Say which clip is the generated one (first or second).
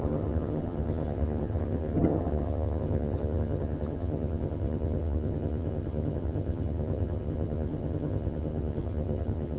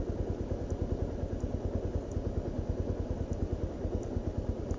first